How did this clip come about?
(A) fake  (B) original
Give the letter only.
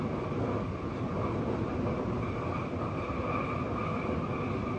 B